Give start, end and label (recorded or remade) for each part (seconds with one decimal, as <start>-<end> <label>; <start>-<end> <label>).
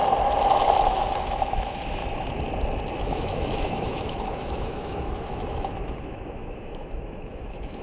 0.0-0.9 recorded; 0.9-2.0 remade; 2.0-3.0 recorded; 3.0-7.8 remade